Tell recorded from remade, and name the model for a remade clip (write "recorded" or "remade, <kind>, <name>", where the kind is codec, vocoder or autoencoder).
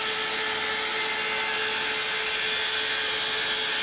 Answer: recorded